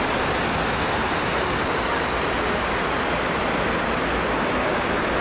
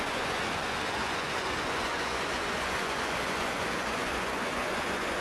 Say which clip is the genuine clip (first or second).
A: first